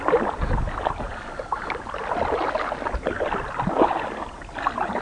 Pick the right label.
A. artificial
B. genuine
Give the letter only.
B